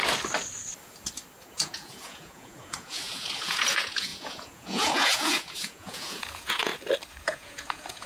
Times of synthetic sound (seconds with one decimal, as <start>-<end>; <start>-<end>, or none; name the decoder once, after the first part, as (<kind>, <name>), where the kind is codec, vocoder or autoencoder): 1.5-6.7 (vocoder, Vocos); 7.2-8.1

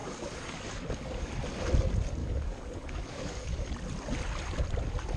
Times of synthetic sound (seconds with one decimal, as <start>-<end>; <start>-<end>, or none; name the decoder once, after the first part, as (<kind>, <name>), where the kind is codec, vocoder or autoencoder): 0.0-1.3 (codec, DAC); 2.2-3.7